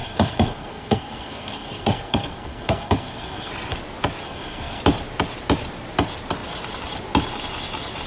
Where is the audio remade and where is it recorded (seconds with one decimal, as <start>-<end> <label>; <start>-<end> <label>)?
0.0-3.5 remade; 3.5-4.2 recorded; 4.2-4.8 remade; 4.8-8.1 recorded